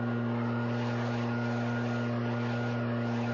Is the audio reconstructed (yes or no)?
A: no